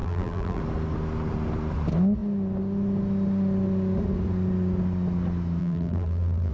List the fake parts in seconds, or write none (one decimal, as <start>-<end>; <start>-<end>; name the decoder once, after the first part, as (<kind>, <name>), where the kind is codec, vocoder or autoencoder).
0.0-0.6 (vocoder, BigVGAN v2); 5.6-6.5